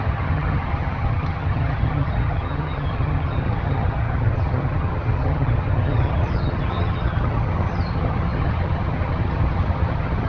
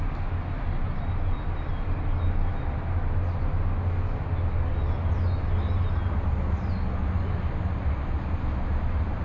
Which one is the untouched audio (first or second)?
second